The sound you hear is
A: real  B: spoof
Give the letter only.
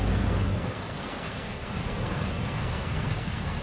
B